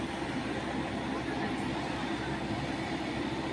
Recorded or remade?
recorded